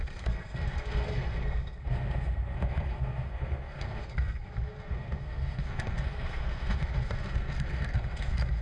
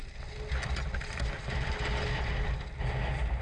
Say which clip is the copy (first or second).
first